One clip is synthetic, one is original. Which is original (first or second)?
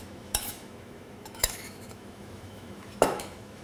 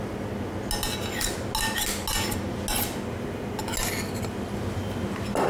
second